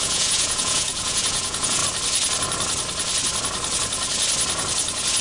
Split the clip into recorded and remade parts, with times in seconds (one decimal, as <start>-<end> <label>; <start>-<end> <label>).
0.0-1.8 remade; 1.8-5.2 recorded